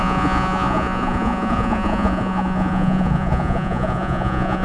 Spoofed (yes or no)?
yes